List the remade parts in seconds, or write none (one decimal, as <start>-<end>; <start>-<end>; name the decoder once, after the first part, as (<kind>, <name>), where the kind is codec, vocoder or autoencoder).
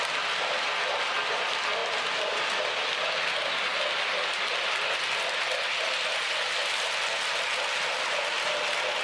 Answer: none